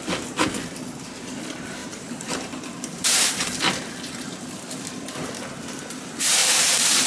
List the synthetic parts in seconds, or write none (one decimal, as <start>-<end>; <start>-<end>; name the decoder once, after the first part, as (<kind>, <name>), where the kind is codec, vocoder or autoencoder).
1.8-3.6 (vocoder, BigVGAN v2); 6.4-7.1